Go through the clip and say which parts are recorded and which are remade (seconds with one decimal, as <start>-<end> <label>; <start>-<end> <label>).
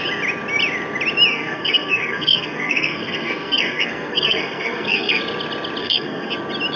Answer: 0.0-1.3 recorded; 1.3-5.2 remade; 5.2-5.8 recorded; 5.8-6.3 remade; 6.3-6.8 recorded